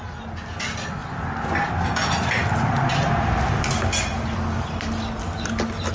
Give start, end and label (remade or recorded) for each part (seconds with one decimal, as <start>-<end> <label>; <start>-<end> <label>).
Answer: 0.0-5.9 recorded

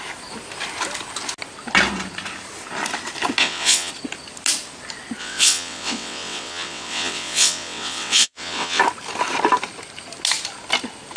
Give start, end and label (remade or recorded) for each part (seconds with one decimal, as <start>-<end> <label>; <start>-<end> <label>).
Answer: 0.0-3.4 recorded; 3.4-3.9 remade; 3.9-5.2 recorded; 5.2-8.8 remade; 8.8-11.2 recorded